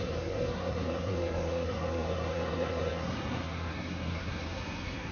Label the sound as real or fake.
fake